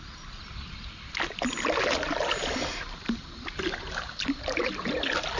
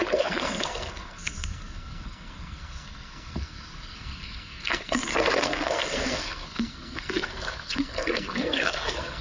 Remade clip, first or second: second